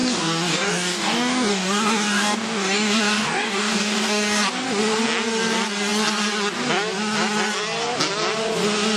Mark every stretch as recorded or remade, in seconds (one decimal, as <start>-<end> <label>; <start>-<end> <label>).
0.0-4.4 remade; 4.4-9.0 recorded